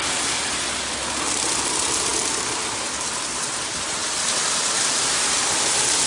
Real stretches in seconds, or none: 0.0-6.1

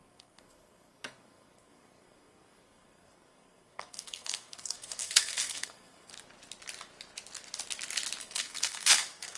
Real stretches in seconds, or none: 6.1-8.2